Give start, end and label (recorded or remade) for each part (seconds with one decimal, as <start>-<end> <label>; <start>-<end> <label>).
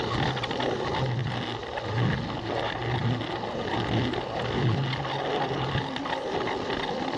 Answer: 0.0-7.2 recorded